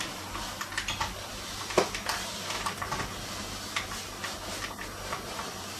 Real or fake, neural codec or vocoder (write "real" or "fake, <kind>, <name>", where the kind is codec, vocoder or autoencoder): real